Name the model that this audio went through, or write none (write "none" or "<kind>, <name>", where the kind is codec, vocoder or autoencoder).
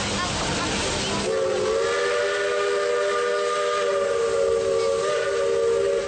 none